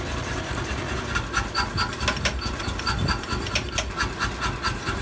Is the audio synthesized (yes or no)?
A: no